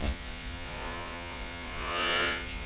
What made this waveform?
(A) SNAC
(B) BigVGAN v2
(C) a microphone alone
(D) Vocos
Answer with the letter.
D